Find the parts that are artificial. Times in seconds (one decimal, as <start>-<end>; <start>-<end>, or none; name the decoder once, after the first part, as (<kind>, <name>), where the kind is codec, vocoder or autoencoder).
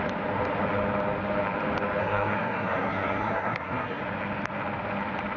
2.0-4.0 (codec, SNAC)